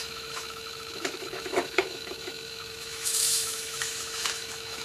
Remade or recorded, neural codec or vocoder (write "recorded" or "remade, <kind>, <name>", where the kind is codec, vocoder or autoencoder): remade, autoencoder, DAC-VAE